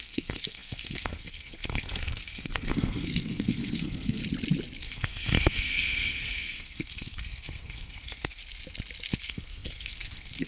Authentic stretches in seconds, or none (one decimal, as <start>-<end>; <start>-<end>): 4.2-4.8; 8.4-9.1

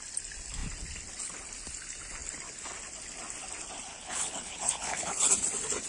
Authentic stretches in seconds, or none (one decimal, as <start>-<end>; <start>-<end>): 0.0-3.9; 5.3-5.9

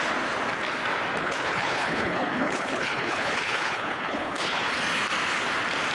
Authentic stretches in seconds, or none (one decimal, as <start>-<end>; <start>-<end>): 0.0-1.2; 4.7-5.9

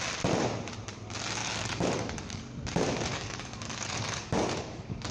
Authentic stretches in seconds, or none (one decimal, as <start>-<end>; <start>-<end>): 0.0-1.4; 2.4-3.1